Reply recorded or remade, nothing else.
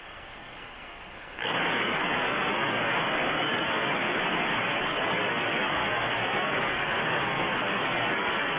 remade